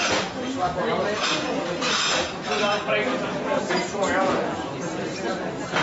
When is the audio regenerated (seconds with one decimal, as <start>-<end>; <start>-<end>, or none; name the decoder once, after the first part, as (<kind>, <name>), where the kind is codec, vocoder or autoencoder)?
1.2-4.7 (vocoder, Vocos)